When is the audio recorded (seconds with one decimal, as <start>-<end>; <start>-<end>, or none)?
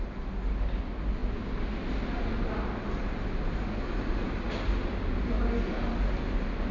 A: 0.0-6.7